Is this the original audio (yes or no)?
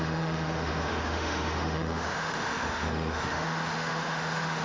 no